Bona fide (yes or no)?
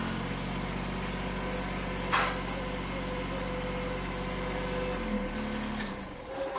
yes